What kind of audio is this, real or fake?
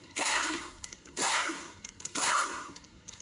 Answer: fake